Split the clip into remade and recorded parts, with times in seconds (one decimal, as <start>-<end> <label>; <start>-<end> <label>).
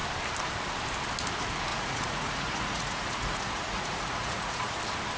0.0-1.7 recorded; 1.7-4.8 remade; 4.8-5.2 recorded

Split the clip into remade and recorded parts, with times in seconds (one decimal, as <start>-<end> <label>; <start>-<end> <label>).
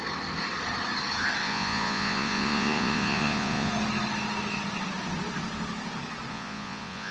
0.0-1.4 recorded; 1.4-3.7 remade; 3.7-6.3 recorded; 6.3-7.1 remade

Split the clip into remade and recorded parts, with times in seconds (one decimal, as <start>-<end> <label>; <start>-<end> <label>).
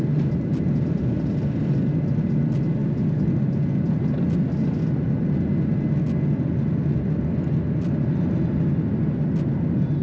0.0-10.0 recorded